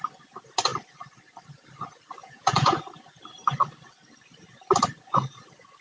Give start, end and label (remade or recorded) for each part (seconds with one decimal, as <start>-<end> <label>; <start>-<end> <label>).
0.0-2.2 recorded; 2.2-2.8 remade; 2.8-5.8 recorded